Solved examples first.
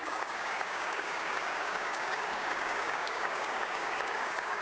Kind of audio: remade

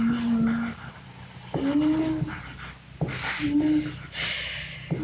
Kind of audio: recorded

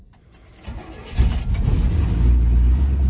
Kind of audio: recorded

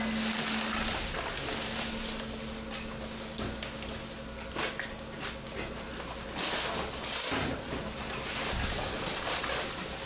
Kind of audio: recorded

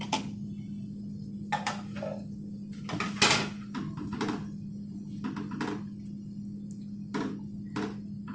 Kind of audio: recorded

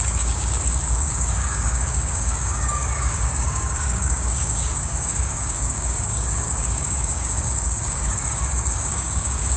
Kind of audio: remade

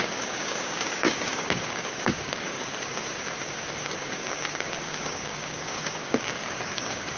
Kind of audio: remade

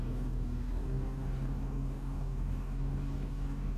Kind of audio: remade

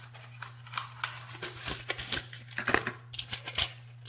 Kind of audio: recorded